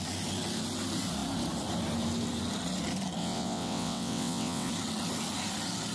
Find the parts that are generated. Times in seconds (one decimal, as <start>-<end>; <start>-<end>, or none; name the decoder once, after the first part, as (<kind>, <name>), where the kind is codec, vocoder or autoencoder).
3.2-4.7 (vocoder, WaveNeXt)